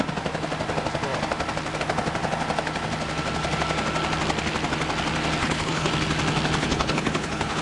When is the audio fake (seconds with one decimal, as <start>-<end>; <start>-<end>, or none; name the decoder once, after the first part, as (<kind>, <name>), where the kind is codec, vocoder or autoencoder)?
5.4-5.9 (codec, HILCodec); 6.6-7.6